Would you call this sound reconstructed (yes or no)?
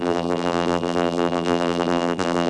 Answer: yes